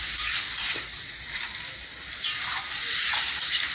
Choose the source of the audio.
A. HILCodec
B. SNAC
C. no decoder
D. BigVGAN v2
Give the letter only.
D